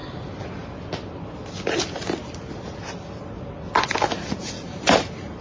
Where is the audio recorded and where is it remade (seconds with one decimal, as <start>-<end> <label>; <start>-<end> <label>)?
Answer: 0.0-1.7 recorded; 1.7-2.2 remade; 2.2-4.1 recorded; 4.1-5.4 remade